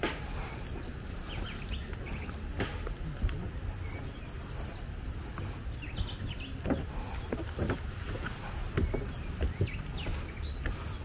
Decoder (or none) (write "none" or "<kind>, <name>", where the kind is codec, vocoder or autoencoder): none